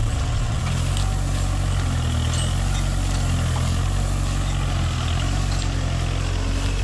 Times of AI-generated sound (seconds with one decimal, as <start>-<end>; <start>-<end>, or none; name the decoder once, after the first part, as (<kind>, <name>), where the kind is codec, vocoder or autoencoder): 0.0-0.6 (vocoder, WaveNeXt)